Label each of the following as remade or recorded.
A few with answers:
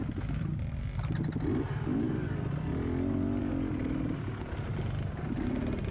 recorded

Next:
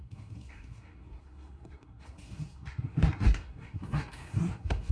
remade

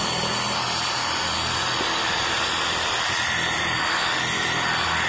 recorded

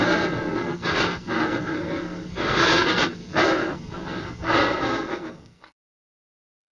remade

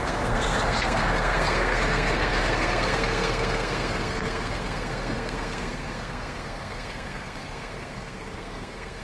remade